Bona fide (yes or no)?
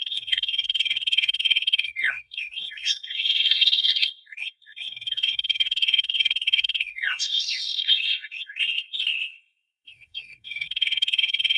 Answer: no